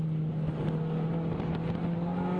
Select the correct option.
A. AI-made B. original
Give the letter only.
B